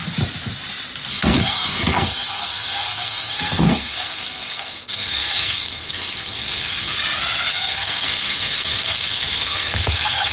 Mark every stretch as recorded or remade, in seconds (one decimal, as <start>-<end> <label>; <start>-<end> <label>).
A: 0.0-1.1 recorded; 1.1-7.0 remade; 7.0-7.5 recorded; 7.5-10.3 remade